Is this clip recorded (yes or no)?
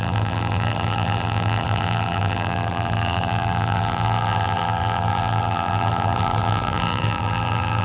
no